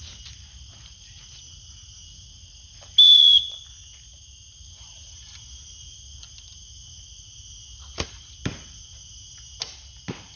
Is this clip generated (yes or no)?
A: no